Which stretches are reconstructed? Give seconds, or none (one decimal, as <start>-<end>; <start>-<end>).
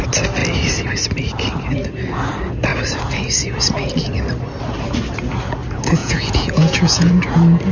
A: 6.0-7.1